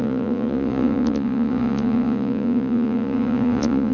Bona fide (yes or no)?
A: no